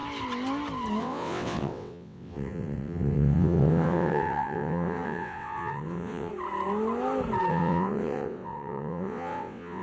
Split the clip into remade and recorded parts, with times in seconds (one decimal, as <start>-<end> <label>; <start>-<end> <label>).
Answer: 0.0-1.0 recorded; 1.0-6.3 remade; 6.3-7.5 recorded; 7.5-9.8 remade